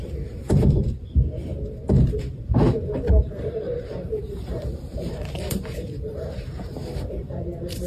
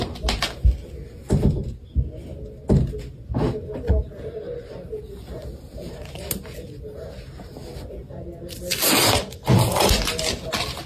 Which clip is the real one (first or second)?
second